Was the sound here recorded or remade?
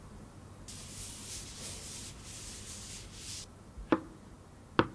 recorded